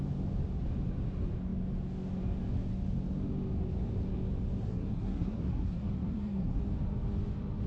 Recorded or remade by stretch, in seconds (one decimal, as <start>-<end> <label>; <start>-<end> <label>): 0.0-4.6 recorded; 4.6-6.6 remade; 6.6-7.7 recorded